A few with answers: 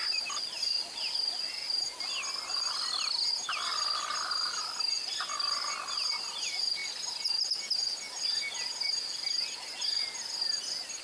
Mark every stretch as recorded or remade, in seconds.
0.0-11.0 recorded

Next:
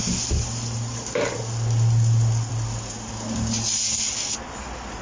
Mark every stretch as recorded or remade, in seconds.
0.0-5.0 recorded

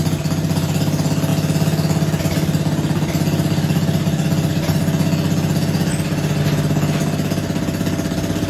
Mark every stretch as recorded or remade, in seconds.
0.0-8.5 recorded